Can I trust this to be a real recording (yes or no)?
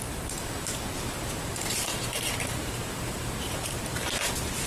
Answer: no